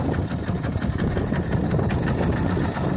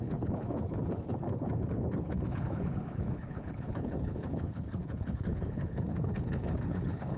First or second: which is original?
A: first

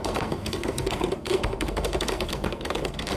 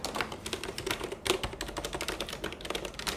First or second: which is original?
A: second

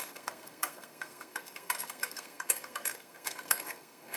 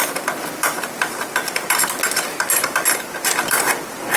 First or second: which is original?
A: second